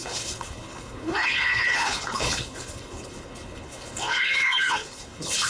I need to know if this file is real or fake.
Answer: fake